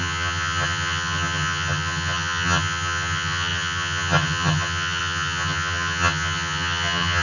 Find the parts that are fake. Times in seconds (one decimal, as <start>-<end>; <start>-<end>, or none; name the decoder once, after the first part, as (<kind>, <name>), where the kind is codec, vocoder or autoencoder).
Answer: 0.0-7.2 (vocoder, HiFi-GAN)